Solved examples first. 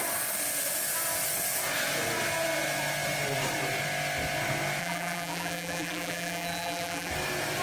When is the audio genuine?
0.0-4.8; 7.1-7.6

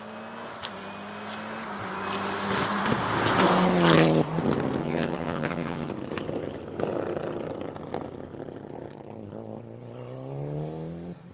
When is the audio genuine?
0.0-4.8; 5.9-11.3

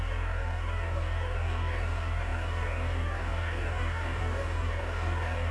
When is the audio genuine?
none

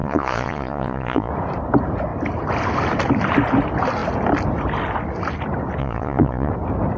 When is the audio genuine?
1.3-5.8; 6.5-7.0